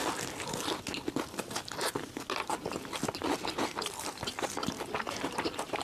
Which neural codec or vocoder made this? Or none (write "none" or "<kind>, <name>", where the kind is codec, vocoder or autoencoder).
none